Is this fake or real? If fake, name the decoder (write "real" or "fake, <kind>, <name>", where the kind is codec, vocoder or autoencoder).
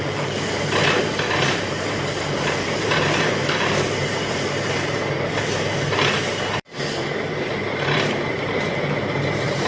fake, vocoder, BigVGAN v2